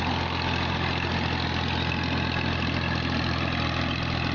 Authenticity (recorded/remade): recorded